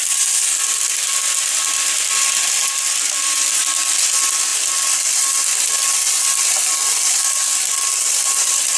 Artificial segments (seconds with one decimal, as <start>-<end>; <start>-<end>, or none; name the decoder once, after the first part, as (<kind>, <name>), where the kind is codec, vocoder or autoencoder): 2.6-3.6 (vocoder, BigVGAN v2)